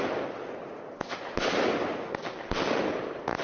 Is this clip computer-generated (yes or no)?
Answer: no